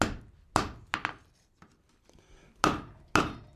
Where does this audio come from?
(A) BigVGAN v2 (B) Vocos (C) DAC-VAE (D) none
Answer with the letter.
D